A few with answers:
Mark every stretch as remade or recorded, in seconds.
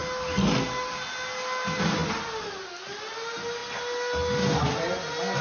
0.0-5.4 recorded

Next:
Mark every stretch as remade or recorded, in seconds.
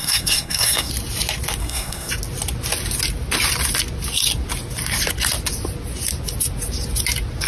0.0-0.9 remade; 0.9-1.6 recorded; 1.6-2.1 remade; 2.1-7.5 recorded